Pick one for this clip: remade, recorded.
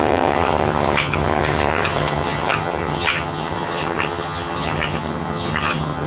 remade